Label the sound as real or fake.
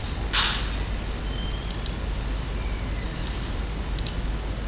real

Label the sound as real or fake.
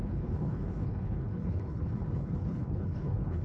fake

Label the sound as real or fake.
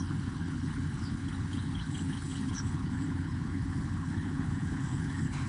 fake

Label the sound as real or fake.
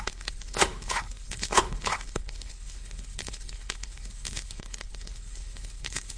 fake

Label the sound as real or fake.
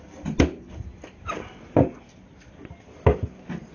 real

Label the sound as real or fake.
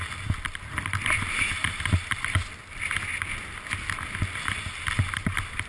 real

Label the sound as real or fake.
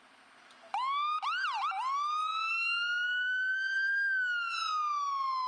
real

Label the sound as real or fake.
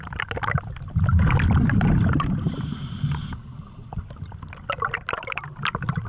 real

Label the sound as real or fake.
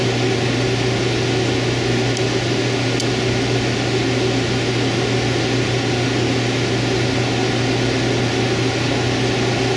real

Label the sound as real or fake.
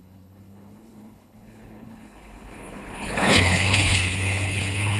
fake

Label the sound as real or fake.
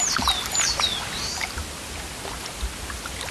real